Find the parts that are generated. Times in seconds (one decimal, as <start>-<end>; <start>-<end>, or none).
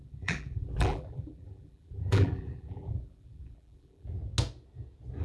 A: 0.0-4.2